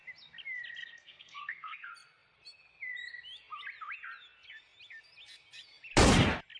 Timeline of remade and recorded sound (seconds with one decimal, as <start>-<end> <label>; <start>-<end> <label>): 0.0-0.8 recorded; 0.8-1.9 remade; 1.9-6.6 recorded